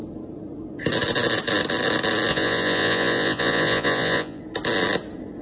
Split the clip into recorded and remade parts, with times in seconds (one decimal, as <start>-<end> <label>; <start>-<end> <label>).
0.0-2.3 recorded; 2.3-4.4 remade; 4.4-5.4 recorded